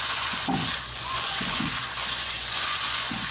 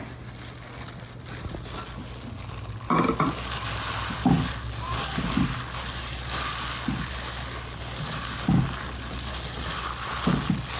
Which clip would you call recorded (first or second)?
second